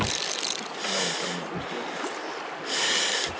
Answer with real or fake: real